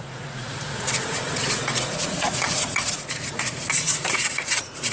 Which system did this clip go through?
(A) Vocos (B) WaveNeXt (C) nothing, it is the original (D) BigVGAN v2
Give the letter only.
A